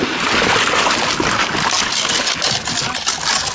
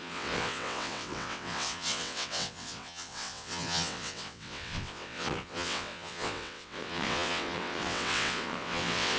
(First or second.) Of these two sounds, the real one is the first